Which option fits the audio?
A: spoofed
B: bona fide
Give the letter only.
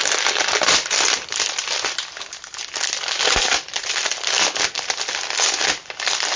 B